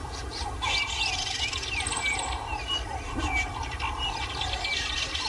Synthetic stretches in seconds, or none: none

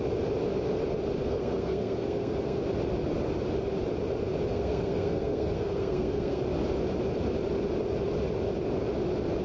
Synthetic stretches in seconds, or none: 1.2-2.6 (codec, SNAC); 4.5-6.4